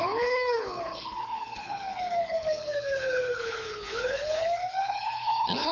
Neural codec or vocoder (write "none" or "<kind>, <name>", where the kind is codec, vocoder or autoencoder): codec, HILCodec